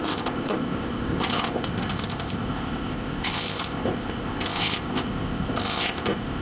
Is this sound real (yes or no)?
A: no